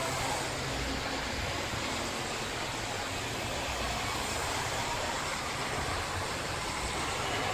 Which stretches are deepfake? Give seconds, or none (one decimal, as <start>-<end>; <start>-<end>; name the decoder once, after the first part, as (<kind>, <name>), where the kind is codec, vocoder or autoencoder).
4.4-5.8 (vocoder, BigVGAN v2)